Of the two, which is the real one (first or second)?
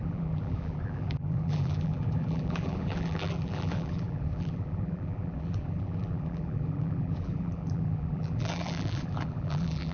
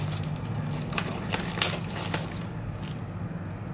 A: second